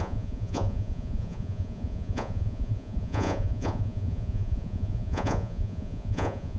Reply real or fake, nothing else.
fake